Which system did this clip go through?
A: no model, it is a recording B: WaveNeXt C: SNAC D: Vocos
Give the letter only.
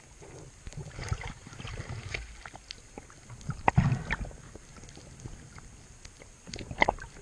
A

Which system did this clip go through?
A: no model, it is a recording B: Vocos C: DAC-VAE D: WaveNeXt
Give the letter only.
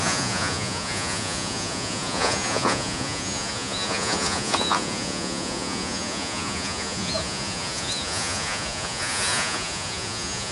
B